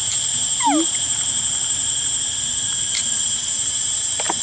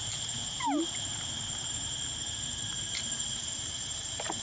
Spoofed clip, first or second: second